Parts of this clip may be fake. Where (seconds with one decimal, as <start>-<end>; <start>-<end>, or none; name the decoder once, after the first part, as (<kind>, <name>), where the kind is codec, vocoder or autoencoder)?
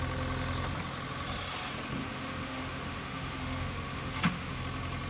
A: 2.0-4.6 (autoencoder, DAC-VAE)